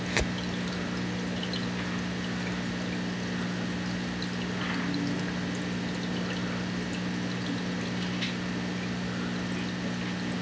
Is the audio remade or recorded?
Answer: recorded